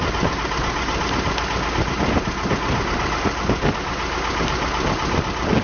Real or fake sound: real